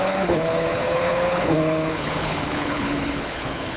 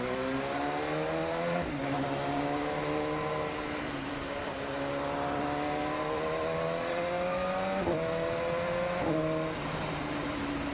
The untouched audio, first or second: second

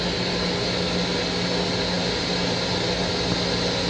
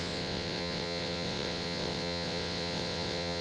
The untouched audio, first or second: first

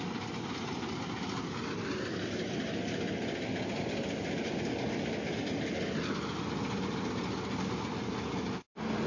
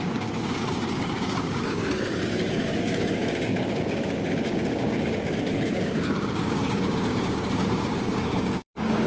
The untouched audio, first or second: first